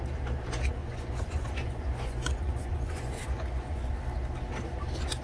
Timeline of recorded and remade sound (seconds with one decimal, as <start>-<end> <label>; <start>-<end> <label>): 0.0-0.8 recorded; 0.8-3.9 remade; 3.9-5.2 recorded